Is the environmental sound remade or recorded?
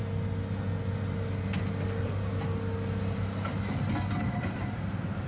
recorded